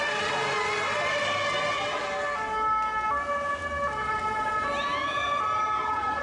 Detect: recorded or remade recorded